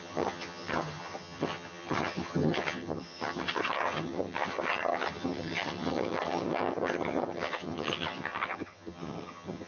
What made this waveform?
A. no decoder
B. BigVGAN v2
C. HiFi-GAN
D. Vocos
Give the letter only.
C